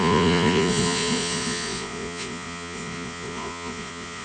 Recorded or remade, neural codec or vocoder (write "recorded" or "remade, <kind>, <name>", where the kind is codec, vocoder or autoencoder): remade, vocoder, Vocos